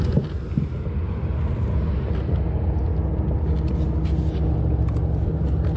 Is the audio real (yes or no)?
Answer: yes